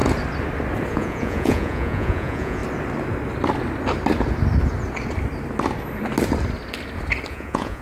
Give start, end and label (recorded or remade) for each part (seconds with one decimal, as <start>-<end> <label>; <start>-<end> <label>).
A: 0.0-0.9 recorded; 0.9-2.6 remade; 2.6-7.3 recorded; 7.3-7.8 remade